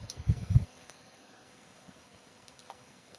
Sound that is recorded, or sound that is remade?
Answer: remade